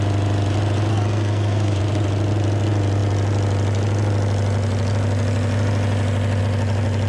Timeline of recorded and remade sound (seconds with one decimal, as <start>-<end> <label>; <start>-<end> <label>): 0.0-0.9 recorded; 0.9-1.8 remade; 1.8-7.1 recorded